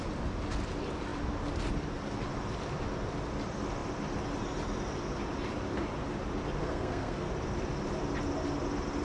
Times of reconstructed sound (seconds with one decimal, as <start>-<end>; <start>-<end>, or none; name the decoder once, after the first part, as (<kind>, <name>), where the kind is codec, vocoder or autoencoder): 6.6-7.3 (codec, SNAC)